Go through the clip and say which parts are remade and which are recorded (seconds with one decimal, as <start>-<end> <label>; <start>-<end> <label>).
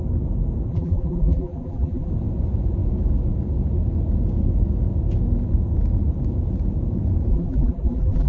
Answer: 0.0-0.7 recorded; 0.7-2.1 remade; 2.1-7.3 recorded; 7.3-8.3 remade